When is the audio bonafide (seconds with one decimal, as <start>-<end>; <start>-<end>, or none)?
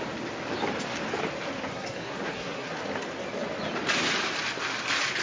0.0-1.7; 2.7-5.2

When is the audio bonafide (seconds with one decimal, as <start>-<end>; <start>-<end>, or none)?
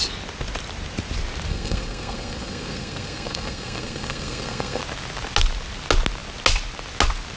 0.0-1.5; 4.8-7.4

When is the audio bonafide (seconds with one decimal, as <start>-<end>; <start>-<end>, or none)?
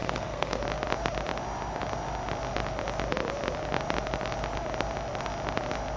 0.6-6.0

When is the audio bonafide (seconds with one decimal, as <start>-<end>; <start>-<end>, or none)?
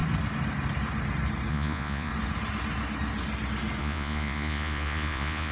0.0-1.5; 2.1-3.8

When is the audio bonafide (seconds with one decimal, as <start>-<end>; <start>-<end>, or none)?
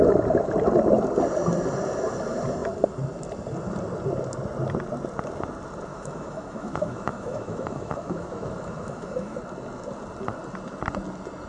0.0-5.9; 9.4-11.5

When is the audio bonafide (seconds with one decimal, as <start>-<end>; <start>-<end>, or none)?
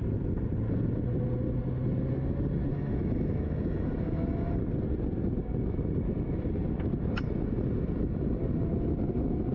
0.0-2.7; 4.6-9.5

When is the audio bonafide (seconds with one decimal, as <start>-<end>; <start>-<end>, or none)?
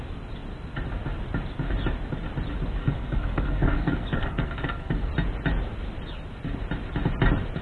0.0-2.8; 5.1-7.6